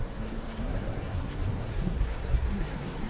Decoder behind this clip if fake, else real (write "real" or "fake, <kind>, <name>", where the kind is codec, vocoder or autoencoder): fake, codec, SNAC